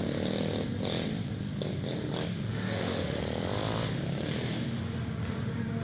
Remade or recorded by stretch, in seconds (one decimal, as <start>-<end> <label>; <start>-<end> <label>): 0.0-2.5 recorded; 2.5-3.2 remade; 3.2-5.8 recorded

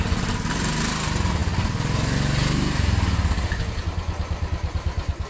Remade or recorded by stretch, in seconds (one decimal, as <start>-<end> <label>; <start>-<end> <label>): 0.0-5.3 recorded

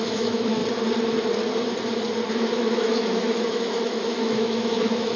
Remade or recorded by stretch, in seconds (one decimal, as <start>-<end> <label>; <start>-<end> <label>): 0.0-0.6 remade; 0.6-2.3 recorded; 2.3-5.2 remade